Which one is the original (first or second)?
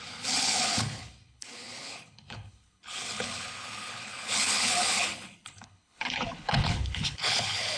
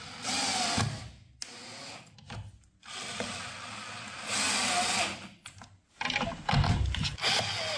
second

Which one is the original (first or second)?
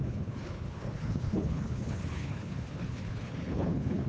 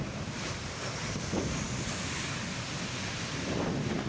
second